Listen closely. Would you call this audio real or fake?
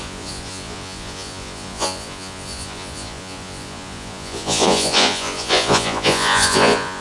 fake